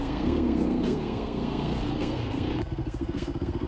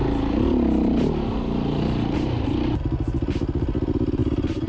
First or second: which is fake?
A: first